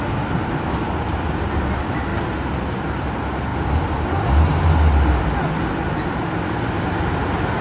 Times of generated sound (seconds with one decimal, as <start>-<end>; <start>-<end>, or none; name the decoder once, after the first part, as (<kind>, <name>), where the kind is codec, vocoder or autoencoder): none